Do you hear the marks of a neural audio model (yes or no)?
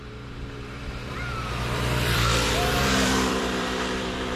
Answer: yes